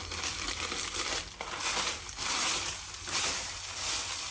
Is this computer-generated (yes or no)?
no